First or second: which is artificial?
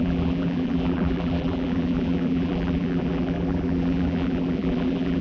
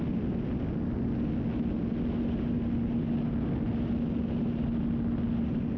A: first